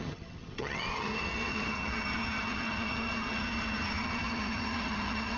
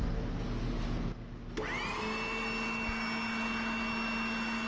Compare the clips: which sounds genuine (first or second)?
second